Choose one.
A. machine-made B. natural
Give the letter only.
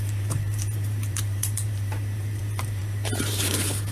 A